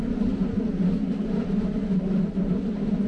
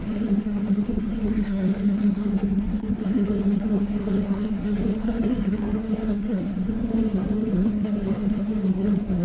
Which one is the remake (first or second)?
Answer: second